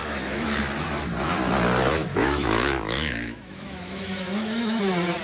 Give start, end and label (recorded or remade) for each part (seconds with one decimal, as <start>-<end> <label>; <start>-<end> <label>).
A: 0.0-0.6 remade; 0.6-2.1 recorded; 2.1-4.8 remade; 4.8-5.2 recorded